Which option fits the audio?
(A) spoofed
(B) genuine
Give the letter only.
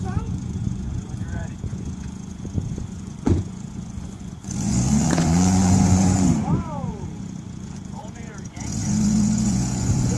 A